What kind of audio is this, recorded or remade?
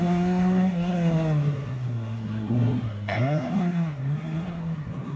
remade